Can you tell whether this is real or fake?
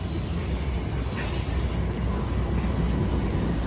real